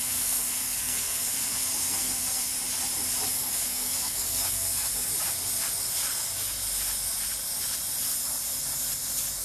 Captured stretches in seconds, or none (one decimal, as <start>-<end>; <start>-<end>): 2.5-3.5; 5.1-9.4